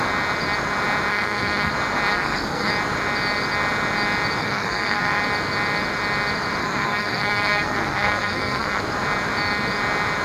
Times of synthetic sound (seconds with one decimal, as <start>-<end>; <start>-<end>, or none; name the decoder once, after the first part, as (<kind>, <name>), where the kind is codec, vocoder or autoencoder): 1.1-1.7 (codec, SNAC); 2.1-2.7; 4.4-5.2; 6.6-8.8